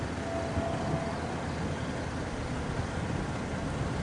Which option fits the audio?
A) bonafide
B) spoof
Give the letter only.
A